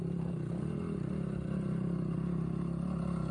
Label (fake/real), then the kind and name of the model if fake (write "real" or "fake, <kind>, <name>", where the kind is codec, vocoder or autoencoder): real